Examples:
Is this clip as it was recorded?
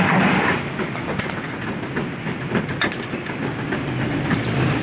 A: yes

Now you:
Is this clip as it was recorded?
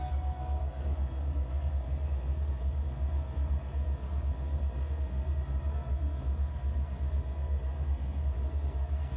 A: no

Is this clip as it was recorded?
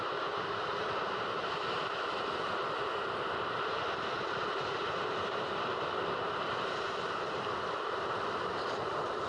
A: no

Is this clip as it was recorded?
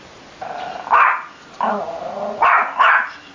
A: yes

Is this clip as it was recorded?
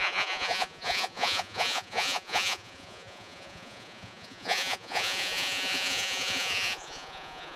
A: no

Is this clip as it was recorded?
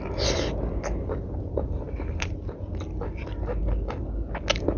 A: yes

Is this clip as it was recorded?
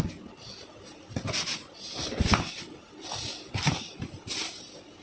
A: yes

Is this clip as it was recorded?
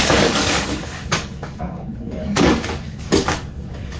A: no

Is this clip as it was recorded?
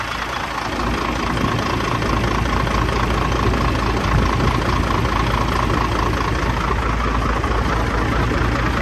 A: yes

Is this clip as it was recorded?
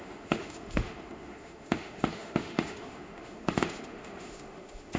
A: no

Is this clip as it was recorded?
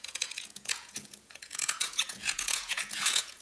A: no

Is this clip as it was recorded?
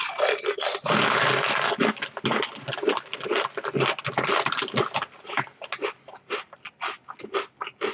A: yes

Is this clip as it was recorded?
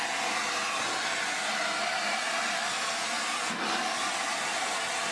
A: yes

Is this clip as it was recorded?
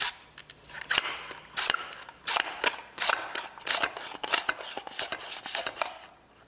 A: yes